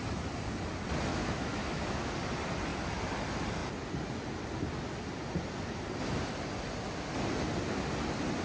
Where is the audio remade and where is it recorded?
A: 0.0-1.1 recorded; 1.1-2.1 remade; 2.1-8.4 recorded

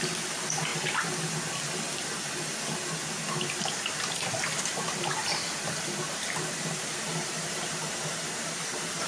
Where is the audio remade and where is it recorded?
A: 0.0-0.7 remade; 0.7-4.6 recorded; 4.6-9.1 remade

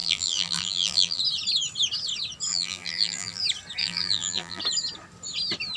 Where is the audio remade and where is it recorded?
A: 0.0-1.2 remade; 1.2-2.5 recorded; 2.5-3.4 remade; 3.4-3.8 recorded; 3.8-4.6 remade; 4.6-5.8 recorded

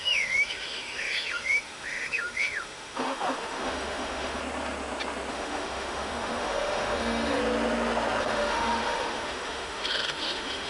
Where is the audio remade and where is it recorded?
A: 0.0-4.4 remade; 4.4-5.3 recorded; 5.3-7.4 remade; 7.4-8.2 recorded; 8.2-10.7 remade